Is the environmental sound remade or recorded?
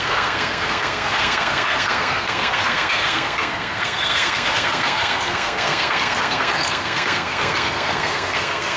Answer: remade